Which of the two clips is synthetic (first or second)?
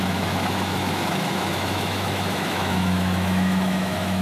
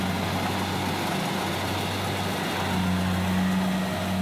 first